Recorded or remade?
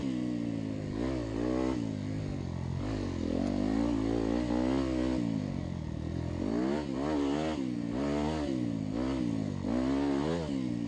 recorded